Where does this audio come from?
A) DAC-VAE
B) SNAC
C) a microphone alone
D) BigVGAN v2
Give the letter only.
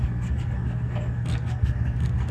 B